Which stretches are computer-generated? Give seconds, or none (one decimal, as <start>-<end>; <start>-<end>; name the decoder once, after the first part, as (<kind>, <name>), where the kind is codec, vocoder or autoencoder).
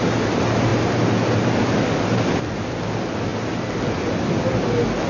none